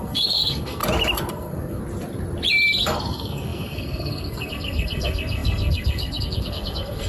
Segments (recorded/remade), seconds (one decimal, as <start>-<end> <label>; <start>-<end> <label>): 0.0-0.8 remade; 0.8-1.3 recorded; 1.3-1.8 remade; 1.8-3.1 recorded; 3.1-7.1 remade